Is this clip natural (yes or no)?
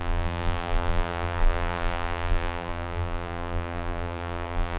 no